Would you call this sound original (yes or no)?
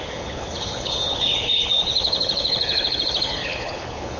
no